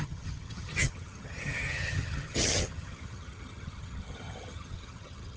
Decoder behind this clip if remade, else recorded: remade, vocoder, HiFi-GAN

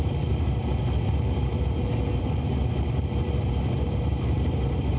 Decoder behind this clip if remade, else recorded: remade, vocoder, BigVGAN v2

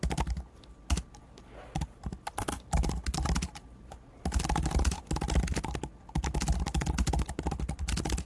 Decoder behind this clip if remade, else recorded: recorded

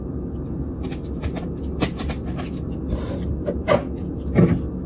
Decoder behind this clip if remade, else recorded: recorded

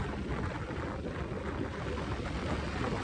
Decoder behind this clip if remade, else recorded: recorded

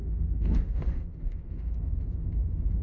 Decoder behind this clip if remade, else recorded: remade, autoencoder, DAC-VAE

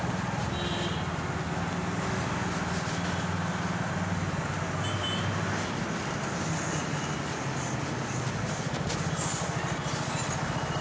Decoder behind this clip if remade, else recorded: recorded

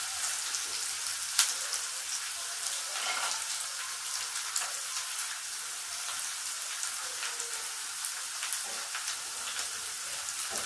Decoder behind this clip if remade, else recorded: recorded